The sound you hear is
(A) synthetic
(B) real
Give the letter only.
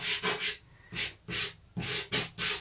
B